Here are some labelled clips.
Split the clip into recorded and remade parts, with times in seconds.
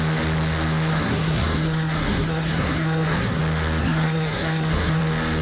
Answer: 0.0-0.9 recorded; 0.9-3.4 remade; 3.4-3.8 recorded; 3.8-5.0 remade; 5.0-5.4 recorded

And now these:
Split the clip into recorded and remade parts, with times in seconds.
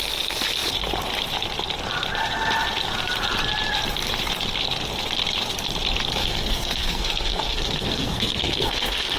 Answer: 0.0-6.2 recorded; 6.2-9.2 remade